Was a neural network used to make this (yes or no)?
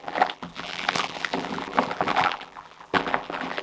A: yes